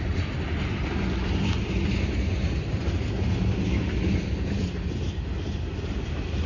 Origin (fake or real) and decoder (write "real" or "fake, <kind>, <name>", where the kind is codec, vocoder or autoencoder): real